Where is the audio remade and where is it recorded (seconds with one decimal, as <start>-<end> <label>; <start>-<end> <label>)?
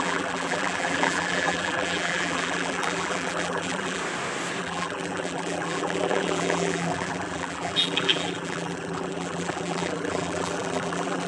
0.0-4.0 remade; 4.0-4.6 recorded; 4.6-11.3 remade